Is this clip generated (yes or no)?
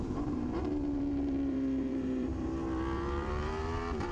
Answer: yes